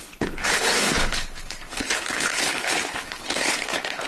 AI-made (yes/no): yes